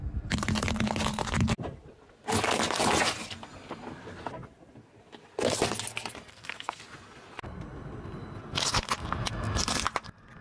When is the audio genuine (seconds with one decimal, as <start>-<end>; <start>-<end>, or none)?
0.0-6.3; 6.8-10.4